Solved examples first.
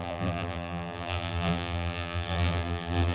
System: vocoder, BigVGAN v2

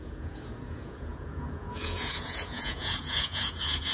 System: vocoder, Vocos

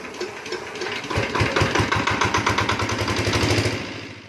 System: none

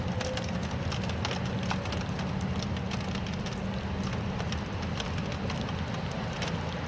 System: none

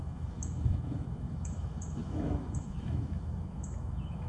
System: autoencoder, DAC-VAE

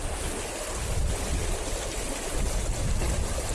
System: none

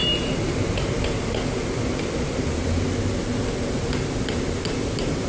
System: none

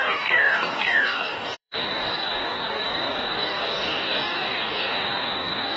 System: codec, DAC